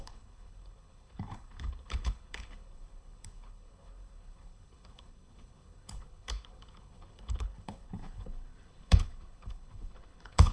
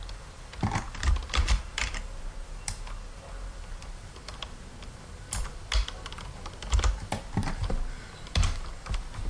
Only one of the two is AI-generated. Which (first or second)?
first